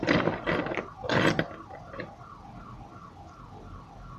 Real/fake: real